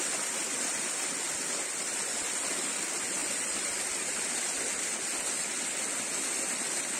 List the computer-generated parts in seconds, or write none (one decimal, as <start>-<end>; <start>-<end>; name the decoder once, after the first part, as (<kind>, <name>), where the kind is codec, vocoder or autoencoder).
none